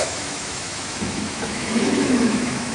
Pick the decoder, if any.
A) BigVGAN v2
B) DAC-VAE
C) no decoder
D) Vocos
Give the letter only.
B